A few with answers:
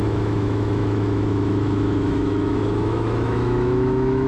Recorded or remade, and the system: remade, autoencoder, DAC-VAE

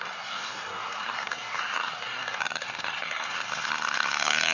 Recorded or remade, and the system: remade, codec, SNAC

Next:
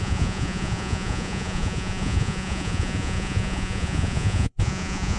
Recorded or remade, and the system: remade, vocoder, Vocos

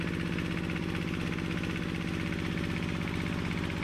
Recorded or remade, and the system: recorded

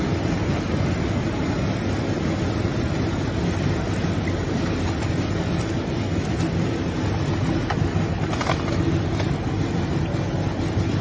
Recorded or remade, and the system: recorded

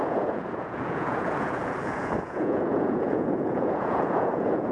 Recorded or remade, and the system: remade, vocoder, Vocos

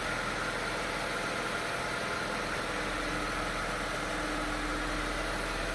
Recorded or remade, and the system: recorded